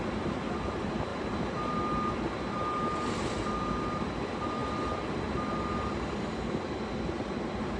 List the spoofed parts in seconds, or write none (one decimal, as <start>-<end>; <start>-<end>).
none